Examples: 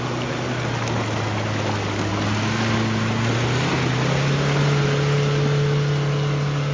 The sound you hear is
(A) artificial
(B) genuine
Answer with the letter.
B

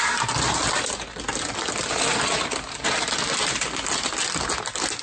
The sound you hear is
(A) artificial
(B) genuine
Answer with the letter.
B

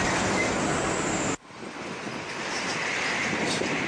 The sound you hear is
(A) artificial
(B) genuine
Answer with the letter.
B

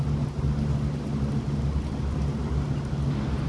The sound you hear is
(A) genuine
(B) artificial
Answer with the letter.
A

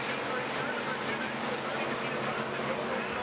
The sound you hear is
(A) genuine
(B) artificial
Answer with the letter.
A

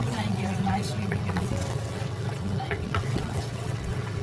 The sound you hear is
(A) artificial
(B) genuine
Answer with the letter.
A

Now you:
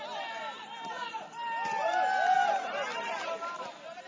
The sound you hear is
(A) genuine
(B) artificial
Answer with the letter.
A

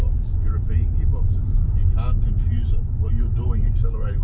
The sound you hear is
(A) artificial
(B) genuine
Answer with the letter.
B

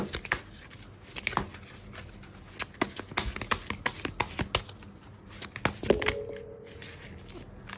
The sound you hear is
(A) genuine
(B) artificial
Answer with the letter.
A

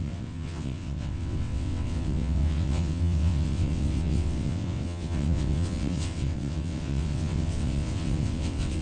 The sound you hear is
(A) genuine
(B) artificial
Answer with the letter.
B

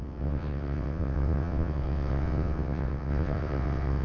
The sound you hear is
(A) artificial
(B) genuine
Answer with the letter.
A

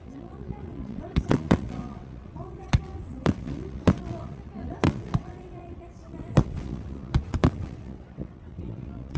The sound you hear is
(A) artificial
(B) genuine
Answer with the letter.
A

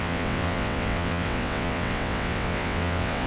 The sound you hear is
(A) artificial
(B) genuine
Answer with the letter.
A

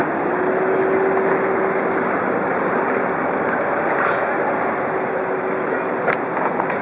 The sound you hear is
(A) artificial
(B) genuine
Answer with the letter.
B